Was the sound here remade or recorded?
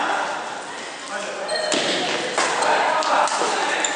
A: recorded